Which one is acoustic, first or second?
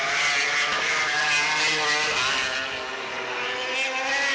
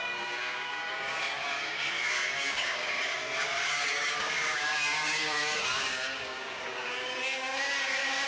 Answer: first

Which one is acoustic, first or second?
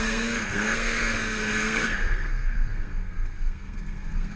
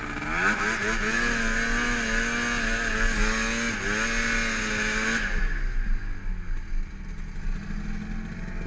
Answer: second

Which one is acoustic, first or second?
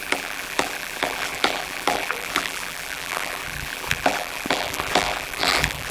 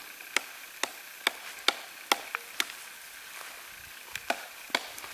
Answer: second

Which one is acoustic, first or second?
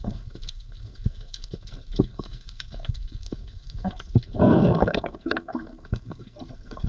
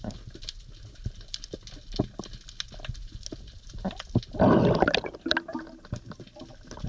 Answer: second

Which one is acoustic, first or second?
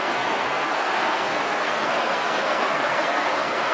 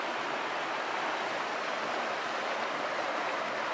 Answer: second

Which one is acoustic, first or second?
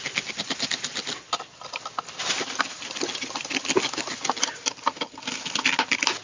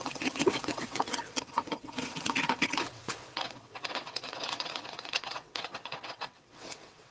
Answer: first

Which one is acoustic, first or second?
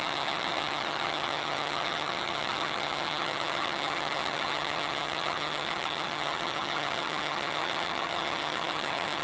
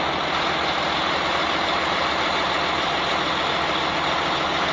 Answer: second